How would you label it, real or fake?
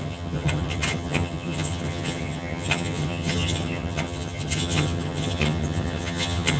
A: fake